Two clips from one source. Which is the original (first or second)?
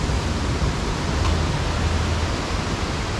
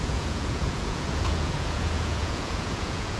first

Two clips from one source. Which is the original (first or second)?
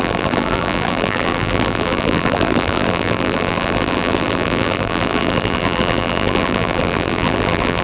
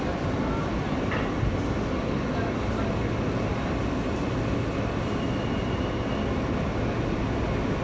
second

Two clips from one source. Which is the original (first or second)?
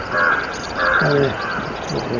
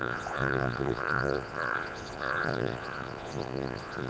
first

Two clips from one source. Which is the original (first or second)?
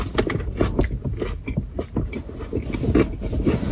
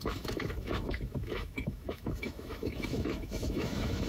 first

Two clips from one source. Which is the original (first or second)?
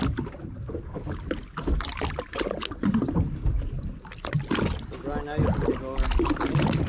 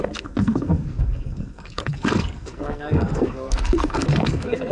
first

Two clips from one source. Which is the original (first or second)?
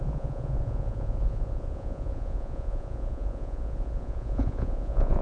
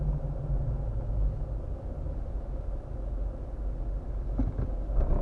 second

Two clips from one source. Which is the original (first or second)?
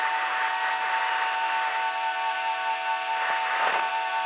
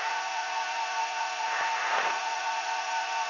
first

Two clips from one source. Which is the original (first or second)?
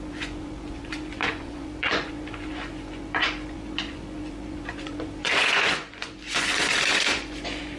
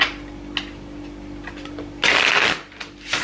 second